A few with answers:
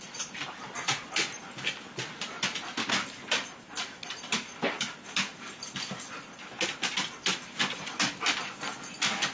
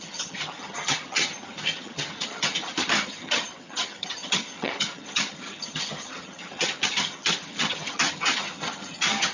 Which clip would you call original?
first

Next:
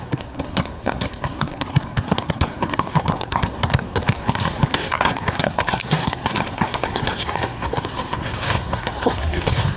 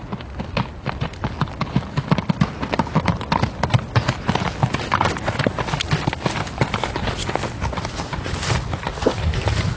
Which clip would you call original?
second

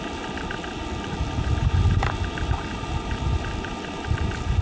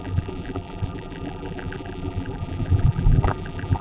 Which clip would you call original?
first